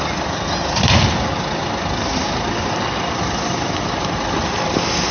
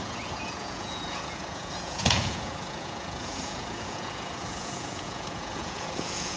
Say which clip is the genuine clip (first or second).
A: first